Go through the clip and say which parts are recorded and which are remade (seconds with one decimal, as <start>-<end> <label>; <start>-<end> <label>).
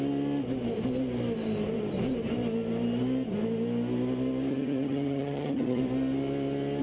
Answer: 0.0-4.5 recorded; 4.5-5.8 remade; 5.8-6.8 recorded